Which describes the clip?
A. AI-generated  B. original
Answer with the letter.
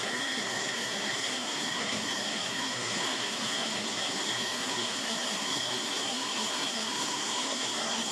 A